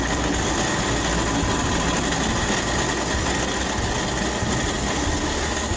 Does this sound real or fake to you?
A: real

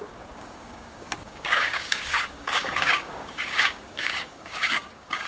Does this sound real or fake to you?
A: fake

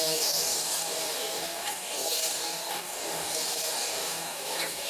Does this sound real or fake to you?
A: fake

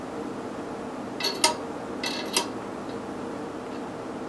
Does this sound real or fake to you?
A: real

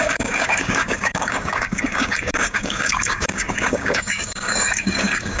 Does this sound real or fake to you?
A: fake